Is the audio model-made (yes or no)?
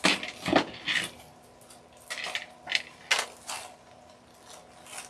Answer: no